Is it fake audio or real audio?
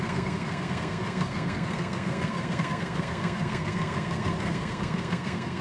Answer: fake